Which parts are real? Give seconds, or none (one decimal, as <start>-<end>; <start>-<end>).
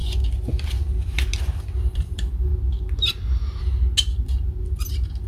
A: 0.0-1.9; 2.5-5.3